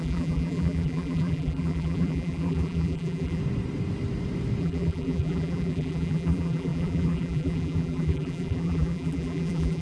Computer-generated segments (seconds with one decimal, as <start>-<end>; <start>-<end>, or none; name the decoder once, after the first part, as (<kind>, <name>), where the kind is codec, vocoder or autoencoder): 0.0-3.4 (vocoder, BigVGAN v2); 4.6-9.8